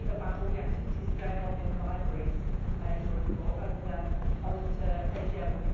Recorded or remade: remade